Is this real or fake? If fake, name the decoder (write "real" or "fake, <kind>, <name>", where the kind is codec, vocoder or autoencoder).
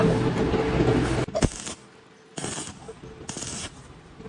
real